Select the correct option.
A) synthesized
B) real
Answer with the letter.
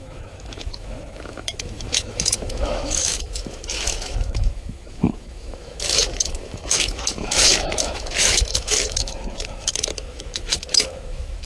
A